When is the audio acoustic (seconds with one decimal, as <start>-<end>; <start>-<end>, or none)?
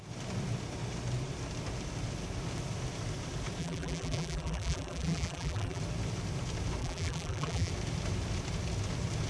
0.0-3.6; 5.8-6.8; 7.7-9.3